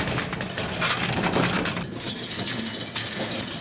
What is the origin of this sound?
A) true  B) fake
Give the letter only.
A